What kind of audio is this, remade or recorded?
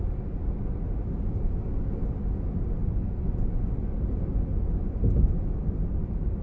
recorded